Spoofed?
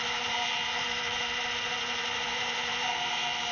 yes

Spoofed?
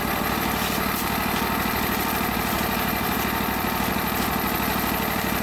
no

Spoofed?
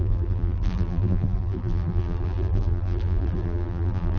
yes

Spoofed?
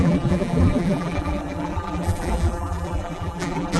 yes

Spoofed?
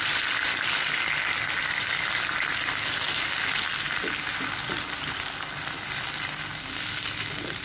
no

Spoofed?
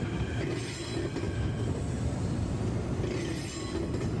no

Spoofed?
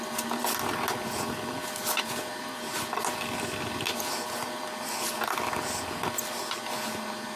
no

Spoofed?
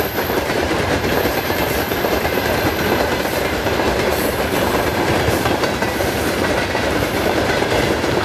yes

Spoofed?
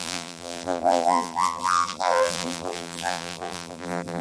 yes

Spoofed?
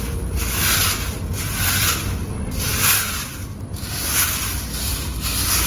no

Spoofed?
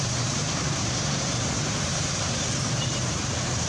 yes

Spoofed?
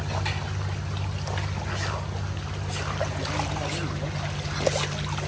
no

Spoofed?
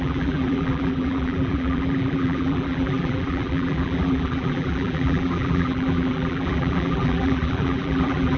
yes